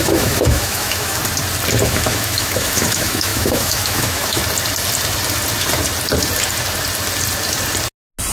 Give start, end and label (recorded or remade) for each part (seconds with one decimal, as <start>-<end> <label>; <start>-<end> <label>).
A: 0.0-1.2 remade; 1.2-1.8 recorded; 1.8-4.4 remade; 4.4-8.3 recorded

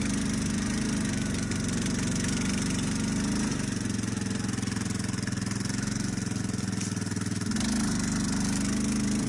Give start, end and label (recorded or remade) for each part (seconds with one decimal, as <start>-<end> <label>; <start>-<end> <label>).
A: 0.0-9.3 recorded

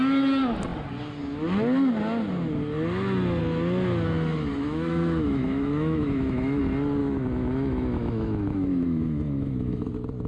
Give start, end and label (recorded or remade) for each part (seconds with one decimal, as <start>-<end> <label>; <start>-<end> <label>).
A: 0.0-4.5 recorded; 4.5-6.6 remade; 6.6-7.0 recorded; 7.0-9.9 remade; 9.9-10.3 recorded

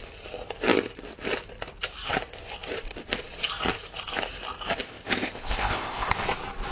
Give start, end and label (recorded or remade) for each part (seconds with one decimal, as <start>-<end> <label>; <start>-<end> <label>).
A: 0.0-4.8 recorded; 4.8-6.1 remade; 6.1-6.7 recorded

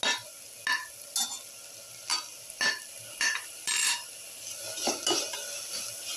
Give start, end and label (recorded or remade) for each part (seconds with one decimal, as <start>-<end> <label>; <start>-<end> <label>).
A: 0.0-2.1 recorded; 2.1-4.9 remade; 4.9-6.2 recorded

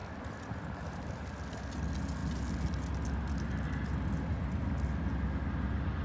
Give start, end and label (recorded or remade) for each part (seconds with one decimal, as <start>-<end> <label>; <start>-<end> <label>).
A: 0.0-6.0 recorded